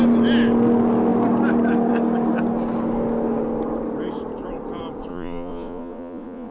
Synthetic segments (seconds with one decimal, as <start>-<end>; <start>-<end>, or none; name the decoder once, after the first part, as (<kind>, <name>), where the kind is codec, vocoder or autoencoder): 5.1-6.5 (vocoder, Vocos)